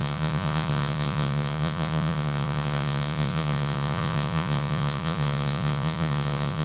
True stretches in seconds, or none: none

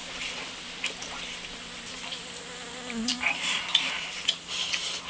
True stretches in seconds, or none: 0.0-3.1; 4.5-5.1

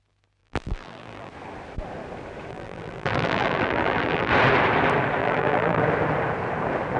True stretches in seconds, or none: 0.0-0.4; 1.3-2.5; 4.3-5.2; 5.8-7.0

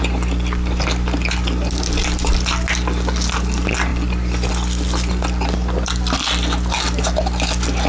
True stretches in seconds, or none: 0.0-7.9